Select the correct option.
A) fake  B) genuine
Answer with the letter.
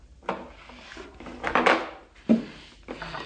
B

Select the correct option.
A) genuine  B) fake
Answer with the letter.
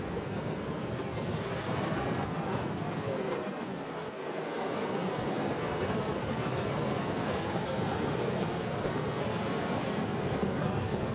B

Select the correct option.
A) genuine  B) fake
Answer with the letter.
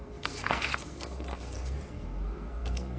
B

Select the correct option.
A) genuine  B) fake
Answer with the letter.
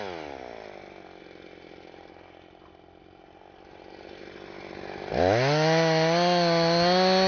A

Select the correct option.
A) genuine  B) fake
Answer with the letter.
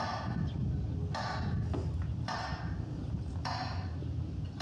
A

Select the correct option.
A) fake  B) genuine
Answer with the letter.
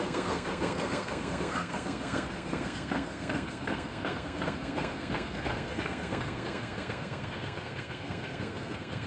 A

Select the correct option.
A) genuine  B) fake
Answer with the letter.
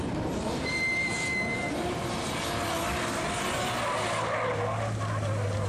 A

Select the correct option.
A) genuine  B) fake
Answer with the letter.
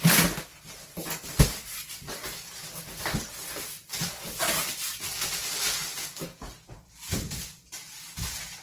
A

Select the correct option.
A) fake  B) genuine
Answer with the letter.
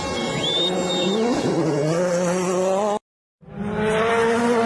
B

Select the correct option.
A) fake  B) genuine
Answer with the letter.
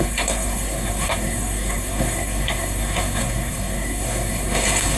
A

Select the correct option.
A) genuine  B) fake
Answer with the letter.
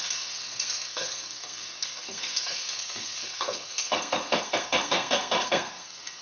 B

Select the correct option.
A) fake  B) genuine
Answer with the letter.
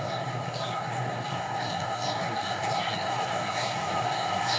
A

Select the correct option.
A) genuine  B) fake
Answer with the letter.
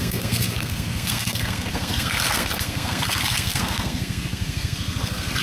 B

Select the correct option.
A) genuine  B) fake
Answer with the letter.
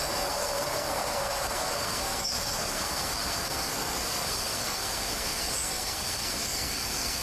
B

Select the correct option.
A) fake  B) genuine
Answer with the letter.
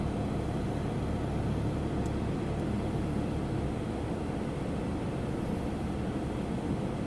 B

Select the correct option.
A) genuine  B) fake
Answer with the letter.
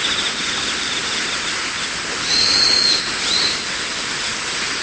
A